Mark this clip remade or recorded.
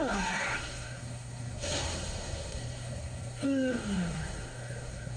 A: remade